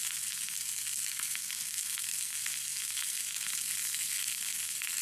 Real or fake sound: fake